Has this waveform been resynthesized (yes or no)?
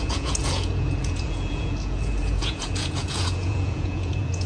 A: yes